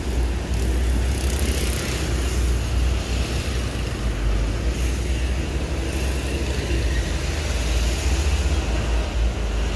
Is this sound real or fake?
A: real